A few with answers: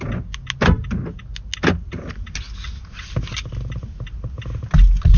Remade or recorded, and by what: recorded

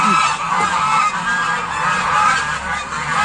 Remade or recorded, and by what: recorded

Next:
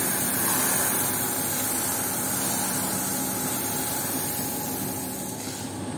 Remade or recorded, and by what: recorded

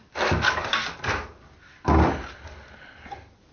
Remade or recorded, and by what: recorded